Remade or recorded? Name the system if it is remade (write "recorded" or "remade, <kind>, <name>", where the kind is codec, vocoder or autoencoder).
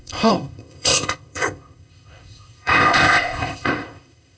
remade, codec, ZipCodec